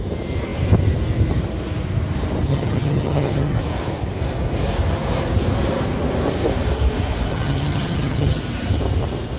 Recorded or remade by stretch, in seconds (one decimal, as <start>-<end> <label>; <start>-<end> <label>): 0.0-2.5 recorded; 2.5-3.6 remade; 3.6-7.3 recorded; 7.3-8.4 remade; 8.4-9.4 recorded